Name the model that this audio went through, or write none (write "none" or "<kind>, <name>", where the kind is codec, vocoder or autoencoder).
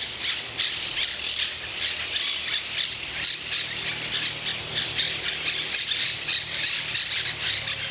none